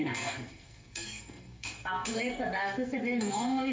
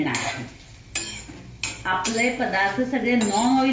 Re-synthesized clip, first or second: first